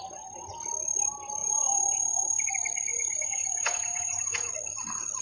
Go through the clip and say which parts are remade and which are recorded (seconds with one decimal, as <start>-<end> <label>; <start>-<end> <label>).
0.0-1.4 recorded; 1.4-2.5 remade; 2.5-2.9 recorded; 2.9-4.5 remade; 4.5-5.2 recorded